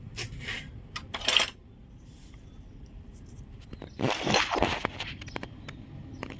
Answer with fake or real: real